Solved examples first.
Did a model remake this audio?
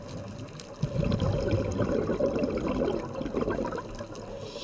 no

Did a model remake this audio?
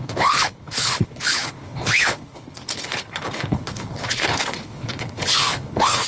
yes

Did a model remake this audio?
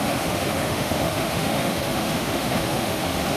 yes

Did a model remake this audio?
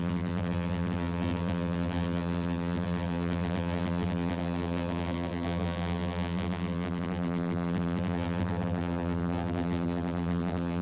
yes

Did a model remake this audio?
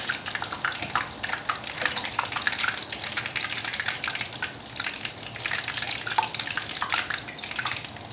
no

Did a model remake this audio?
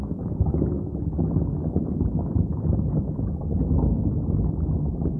yes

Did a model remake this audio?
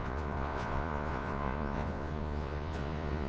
yes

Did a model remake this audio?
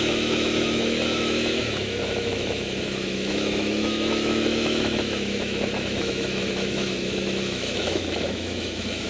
yes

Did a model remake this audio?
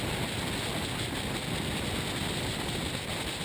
no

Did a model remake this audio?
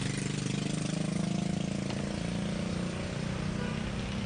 no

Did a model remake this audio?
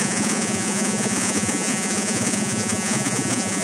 yes